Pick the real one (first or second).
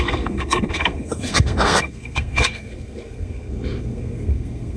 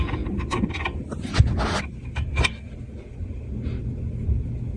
second